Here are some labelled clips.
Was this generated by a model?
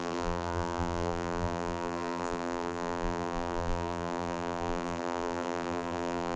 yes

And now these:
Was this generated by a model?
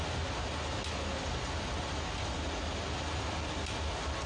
no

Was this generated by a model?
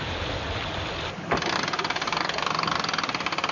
no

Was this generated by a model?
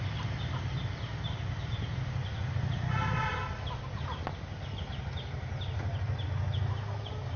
no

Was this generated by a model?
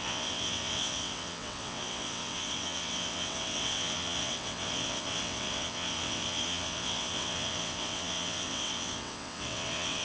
yes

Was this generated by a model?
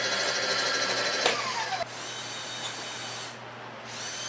no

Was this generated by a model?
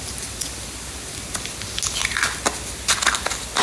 no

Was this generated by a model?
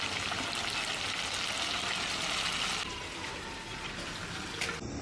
no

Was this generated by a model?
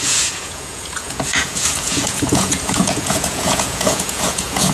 yes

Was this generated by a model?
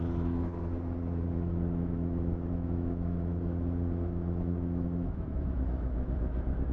yes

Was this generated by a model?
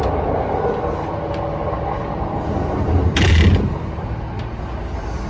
no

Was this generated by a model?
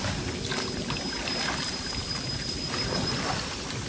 no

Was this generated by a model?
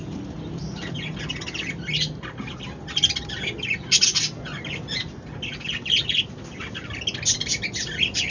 no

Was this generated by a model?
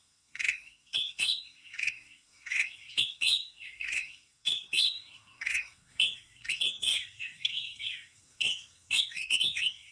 yes